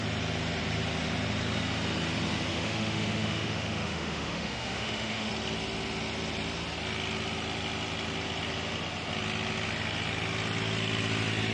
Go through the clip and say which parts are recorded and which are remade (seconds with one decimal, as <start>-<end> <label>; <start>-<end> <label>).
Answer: 0.0-2.5 recorded; 2.5-5.3 remade; 5.3-11.5 recorded